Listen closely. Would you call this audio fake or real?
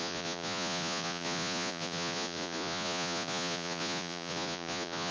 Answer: fake